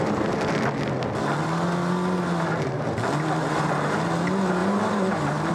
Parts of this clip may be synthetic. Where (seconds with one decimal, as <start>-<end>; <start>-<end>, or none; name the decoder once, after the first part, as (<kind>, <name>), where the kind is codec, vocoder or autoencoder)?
4.6-5.5 (vocoder, BigVGAN v2)